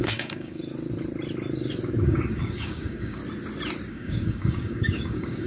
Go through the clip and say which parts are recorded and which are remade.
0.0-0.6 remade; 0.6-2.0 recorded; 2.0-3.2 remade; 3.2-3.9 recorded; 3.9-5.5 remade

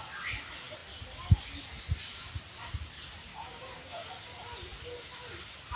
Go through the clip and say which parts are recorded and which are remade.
0.0-3.3 recorded; 3.3-4.1 remade; 4.1-5.8 recorded

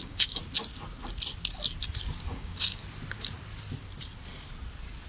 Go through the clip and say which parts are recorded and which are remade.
0.0-0.4 remade; 0.4-2.3 recorded; 2.3-2.8 remade; 2.8-5.1 recorded

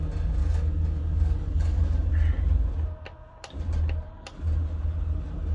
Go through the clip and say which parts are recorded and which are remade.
0.0-0.4 recorded; 0.4-2.1 remade; 2.1-5.5 recorded

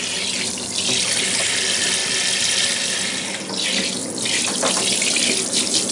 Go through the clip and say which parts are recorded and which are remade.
0.0-5.9 recorded

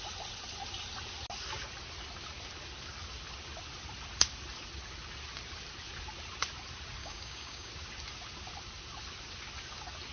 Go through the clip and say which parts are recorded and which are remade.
0.0-7.0 recorded; 7.0-7.7 remade; 7.7-10.1 recorded

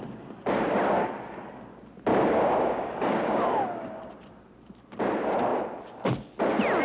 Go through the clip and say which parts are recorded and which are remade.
0.0-2.1 recorded; 2.1-4.4 remade; 4.4-6.8 recorded